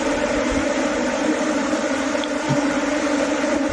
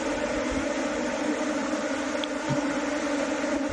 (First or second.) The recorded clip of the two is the second